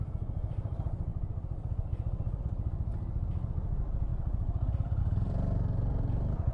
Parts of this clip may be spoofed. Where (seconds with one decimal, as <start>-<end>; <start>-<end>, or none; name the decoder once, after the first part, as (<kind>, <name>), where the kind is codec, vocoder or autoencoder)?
0.0-2.9 (vocoder, BigVGAN v2); 3.5-6.5